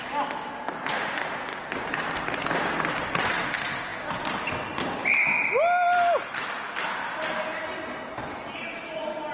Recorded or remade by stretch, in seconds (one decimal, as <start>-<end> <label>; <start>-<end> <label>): 0.0-9.3 recorded